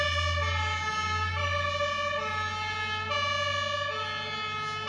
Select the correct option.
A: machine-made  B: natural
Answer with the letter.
B